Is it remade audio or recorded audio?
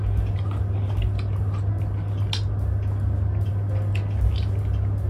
recorded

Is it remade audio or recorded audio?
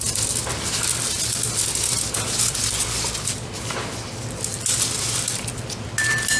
recorded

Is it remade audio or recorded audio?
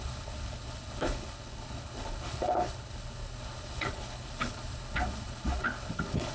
remade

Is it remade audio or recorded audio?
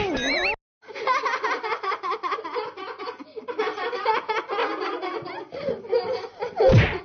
recorded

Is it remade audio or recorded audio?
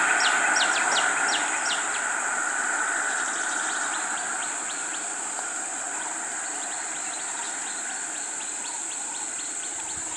recorded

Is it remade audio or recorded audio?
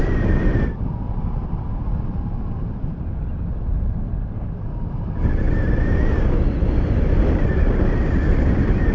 recorded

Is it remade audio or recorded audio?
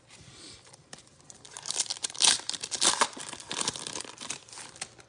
remade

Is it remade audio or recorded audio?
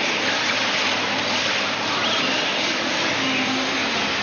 recorded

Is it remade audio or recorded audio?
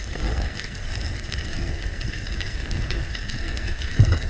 remade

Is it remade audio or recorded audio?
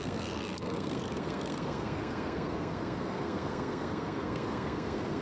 remade